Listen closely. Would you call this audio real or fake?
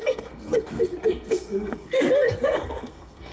fake